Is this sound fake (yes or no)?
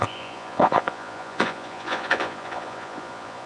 yes